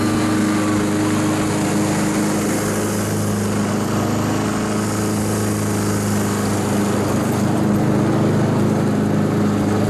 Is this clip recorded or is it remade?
recorded